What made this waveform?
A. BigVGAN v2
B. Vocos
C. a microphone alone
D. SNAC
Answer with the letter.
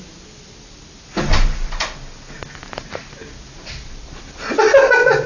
C